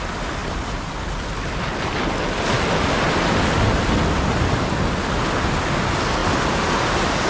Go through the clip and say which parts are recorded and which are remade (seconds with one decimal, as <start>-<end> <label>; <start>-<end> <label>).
0.0-7.3 recorded